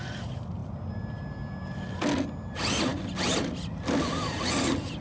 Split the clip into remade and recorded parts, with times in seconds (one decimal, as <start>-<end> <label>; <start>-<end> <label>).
0.0-5.0 recorded